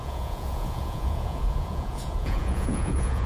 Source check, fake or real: fake